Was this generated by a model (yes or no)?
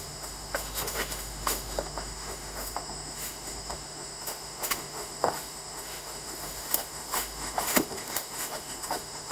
yes